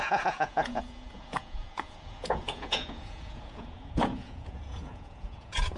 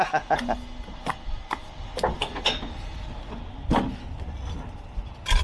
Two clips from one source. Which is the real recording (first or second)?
second